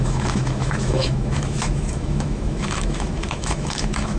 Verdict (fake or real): fake